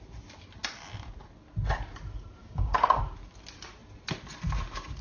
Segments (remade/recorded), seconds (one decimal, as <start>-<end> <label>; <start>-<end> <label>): 0.0-2.4 recorded; 2.4-3.0 remade; 3.0-5.0 recorded